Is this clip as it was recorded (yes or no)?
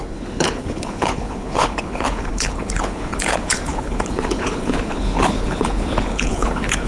no